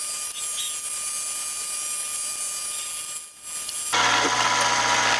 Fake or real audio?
real